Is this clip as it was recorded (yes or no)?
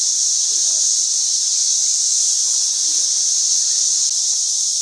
yes